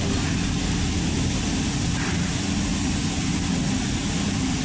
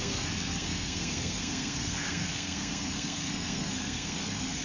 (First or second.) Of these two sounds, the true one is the first